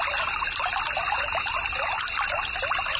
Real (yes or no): yes